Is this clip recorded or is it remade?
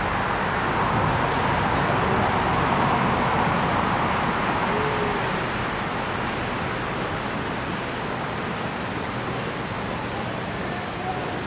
recorded